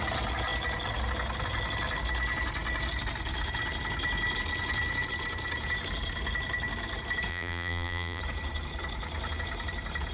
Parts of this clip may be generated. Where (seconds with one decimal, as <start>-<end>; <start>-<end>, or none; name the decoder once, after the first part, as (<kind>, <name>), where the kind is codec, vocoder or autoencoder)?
7.3-8.2 (vocoder, BigVGAN v2)